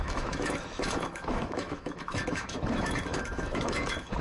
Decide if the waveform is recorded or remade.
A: remade